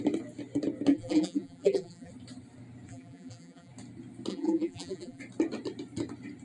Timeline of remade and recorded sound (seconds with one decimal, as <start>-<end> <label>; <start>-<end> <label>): 0.0-0.9 recorded; 0.9-2.1 remade; 2.1-2.9 recorded; 2.9-3.7 remade; 3.7-4.3 recorded; 4.3-5.2 remade; 5.2-6.4 recorded